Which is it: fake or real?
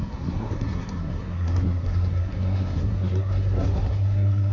fake